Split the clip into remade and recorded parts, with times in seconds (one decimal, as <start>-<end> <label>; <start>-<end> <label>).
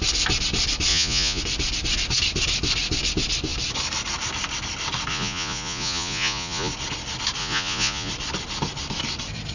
0.0-0.9 recorded; 0.9-1.4 remade; 1.4-5.1 recorded; 5.1-6.7 remade; 6.7-7.4 recorded; 7.4-8.1 remade; 8.1-9.5 recorded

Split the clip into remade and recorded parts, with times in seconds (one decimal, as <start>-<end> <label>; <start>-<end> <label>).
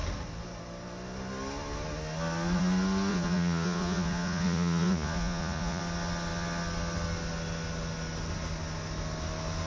0.0-3.1 recorded; 3.1-5.8 remade; 5.8-9.7 recorded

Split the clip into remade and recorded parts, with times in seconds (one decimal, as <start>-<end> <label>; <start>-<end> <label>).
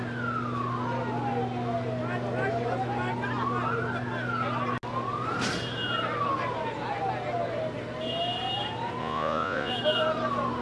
0.0-9.0 recorded; 9.0-9.7 remade; 9.7-10.6 recorded